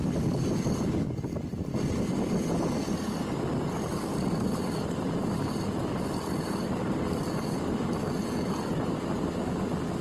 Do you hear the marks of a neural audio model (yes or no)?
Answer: no